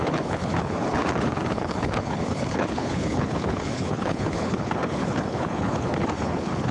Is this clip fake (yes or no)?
yes